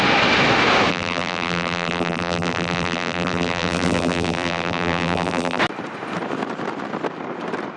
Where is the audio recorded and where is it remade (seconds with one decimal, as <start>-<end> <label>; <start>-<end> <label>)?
0.0-0.9 recorded; 0.9-5.6 remade; 5.6-7.8 recorded